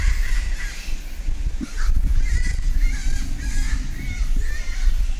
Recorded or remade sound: recorded